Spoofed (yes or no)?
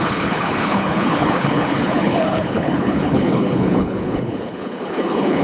yes